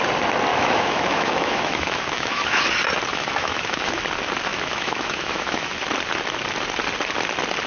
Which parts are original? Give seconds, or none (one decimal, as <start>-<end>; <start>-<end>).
0.0-0.5; 2.6-3.1; 4.0-4.5; 5.7-7.7